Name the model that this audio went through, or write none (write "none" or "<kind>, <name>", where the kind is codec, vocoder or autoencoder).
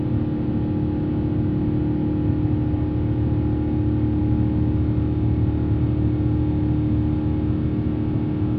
none